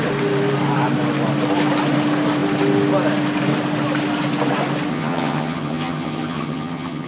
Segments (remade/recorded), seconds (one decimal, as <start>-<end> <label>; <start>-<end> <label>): 0.0-4.9 recorded; 4.9-7.1 remade